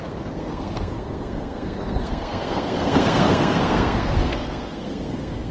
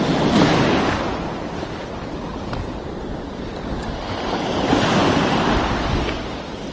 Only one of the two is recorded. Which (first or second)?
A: second